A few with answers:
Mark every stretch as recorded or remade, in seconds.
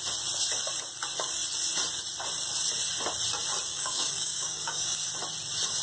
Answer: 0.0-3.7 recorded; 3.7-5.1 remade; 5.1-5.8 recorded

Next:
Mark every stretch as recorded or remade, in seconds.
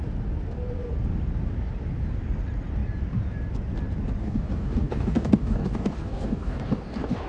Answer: 0.0-4.2 recorded; 4.2-7.3 remade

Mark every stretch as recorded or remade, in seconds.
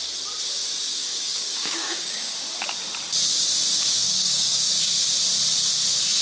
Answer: 0.0-0.9 recorded; 0.9-2.3 remade; 2.3-3.8 recorded; 3.8-4.7 remade; 4.7-6.2 recorded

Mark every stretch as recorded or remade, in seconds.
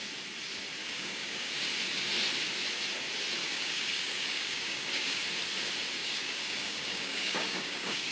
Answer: 0.0-0.8 recorded; 0.8-1.5 remade; 1.5-3.4 recorded; 3.4-5.2 remade; 5.2-6.0 recorded; 6.0-8.1 remade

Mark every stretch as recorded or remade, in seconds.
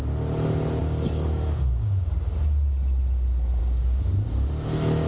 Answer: 0.0-0.8 recorded; 0.8-2.1 remade; 2.1-3.6 recorded; 3.6-4.1 remade; 4.1-5.1 recorded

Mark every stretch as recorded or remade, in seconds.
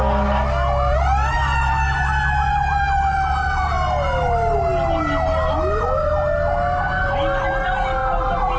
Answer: 0.0-8.6 recorded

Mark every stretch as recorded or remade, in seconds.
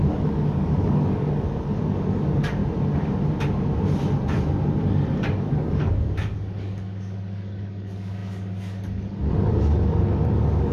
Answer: 0.0-2.6 remade; 2.6-5.1 recorded; 5.1-10.7 remade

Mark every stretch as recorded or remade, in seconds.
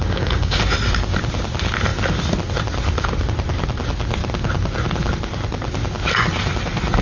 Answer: 0.0-0.6 remade; 0.6-7.0 recorded